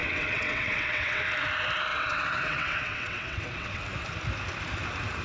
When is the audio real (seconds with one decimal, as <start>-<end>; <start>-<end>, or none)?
1.2-1.9; 3.8-5.2